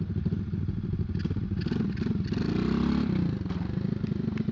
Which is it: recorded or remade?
recorded